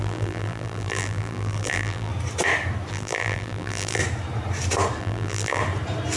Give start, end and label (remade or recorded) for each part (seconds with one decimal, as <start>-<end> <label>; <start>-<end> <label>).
0.0-2.1 remade; 2.1-2.9 recorded; 2.9-4.0 remade; 4.0-5.0 recorded; 5.0-5.6 remade; 5.6-6.2 recorded